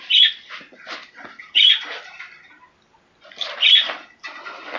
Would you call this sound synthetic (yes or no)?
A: yes